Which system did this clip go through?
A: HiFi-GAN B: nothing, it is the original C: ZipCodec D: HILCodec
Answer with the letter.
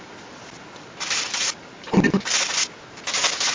B